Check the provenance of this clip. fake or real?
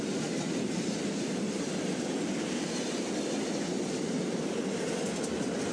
real